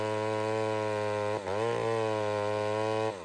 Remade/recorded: recorded